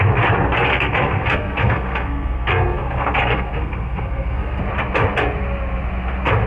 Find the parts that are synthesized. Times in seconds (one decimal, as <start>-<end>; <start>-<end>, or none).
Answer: 0.7-4.6